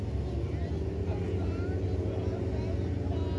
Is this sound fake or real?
real